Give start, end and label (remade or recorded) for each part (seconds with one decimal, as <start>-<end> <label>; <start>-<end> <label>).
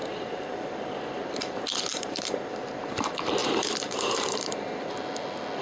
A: 0.0-0.7 remade; 0.7-1.9 recorded; 1.9-2.5 remade; 2.5-3.4 recorded; 3.4-4.7 remade; 4.7-5.6 recorded